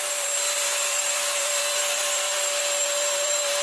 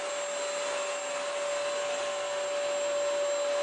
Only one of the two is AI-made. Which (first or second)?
first